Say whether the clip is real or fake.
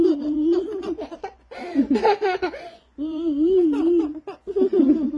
fake